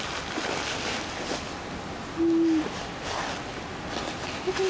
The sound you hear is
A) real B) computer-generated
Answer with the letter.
A